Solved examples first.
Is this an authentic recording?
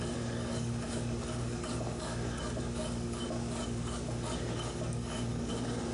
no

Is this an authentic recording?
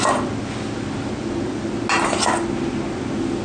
yes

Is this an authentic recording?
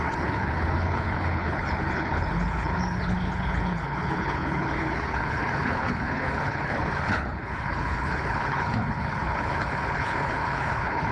no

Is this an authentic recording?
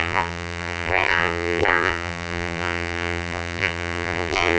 no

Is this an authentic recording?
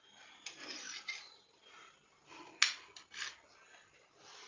yes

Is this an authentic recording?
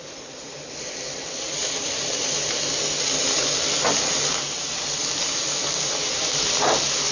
yes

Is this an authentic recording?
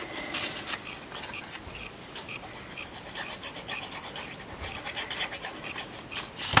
yes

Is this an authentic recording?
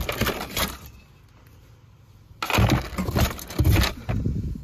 yes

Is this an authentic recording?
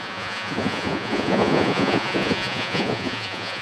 no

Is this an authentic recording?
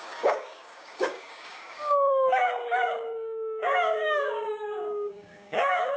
no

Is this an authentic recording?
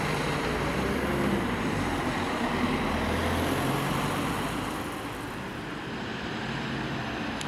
yes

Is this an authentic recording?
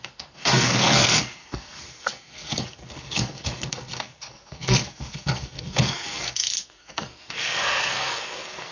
no